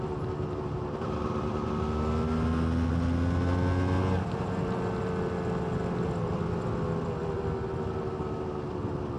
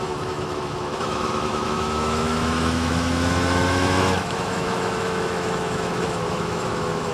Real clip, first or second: first